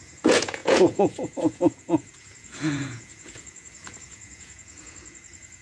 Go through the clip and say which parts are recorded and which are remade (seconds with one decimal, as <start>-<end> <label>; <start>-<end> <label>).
0.0-5.6 remade